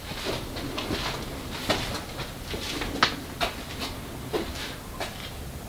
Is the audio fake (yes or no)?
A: no